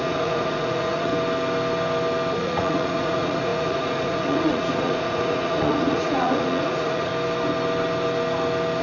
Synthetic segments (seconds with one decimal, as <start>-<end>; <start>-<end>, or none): 0.0-1.1; 2.4-7.1